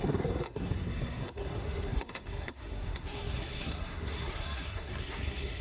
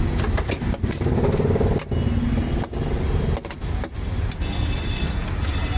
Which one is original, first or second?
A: second